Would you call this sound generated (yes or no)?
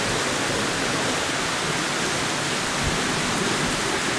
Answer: no